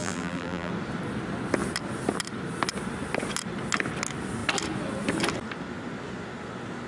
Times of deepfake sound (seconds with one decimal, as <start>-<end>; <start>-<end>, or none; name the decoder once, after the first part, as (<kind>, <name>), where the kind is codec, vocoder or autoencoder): 0.0-0.7 (vocoder, BigVGAN v2)